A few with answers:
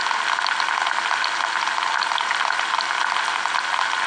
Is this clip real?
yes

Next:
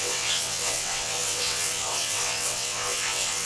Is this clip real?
no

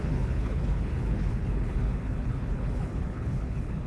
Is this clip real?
no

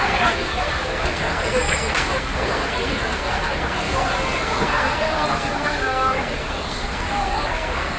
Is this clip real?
no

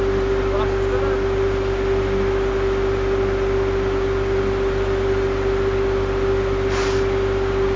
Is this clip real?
yes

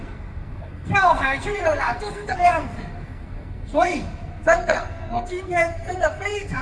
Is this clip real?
no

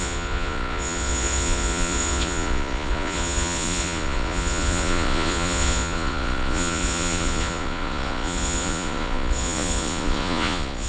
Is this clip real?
no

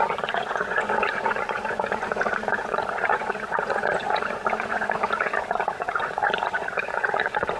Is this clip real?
no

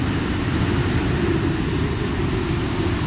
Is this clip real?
yes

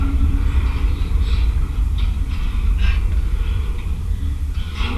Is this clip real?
no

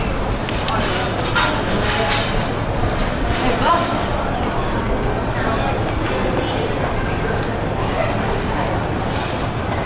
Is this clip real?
yes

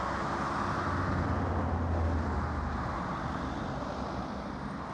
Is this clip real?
yes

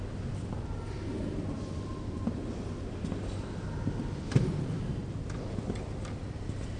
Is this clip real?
yes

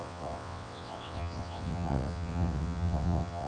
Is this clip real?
no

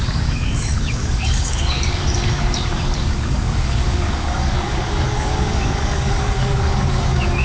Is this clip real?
no